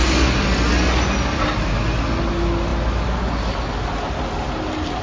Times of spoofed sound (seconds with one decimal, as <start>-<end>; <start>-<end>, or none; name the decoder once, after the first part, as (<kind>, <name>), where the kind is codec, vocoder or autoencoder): none